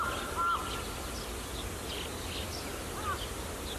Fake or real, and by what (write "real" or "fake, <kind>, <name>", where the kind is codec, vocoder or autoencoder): real